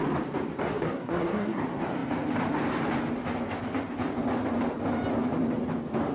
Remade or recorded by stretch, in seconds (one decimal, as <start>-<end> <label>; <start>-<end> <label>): 0.0-0.6 recorded; 0.6-1.6 remade; 1.6-6.1 recorded